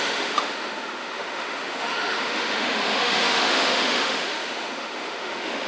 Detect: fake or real fake